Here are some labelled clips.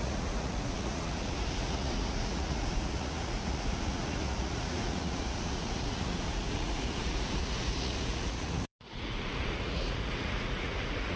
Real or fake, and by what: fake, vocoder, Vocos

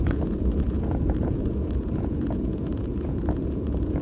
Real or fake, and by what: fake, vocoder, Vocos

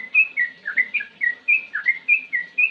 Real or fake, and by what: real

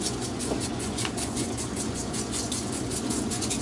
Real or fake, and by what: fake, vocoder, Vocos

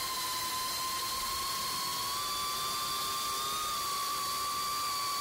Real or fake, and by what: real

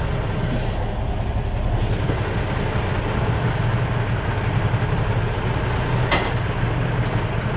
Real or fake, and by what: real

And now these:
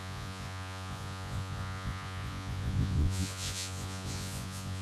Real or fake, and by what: fake, vocoder, Vocos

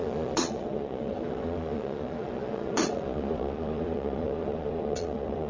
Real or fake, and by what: fake, vocoder, Vocos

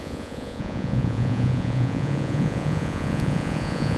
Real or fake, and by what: fake, vocoder, Vocos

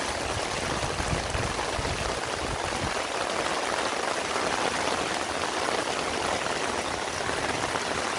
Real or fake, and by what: real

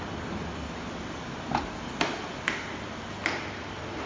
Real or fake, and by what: real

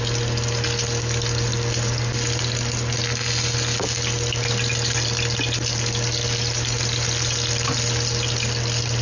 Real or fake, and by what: real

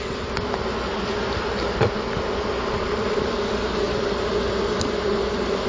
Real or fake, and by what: real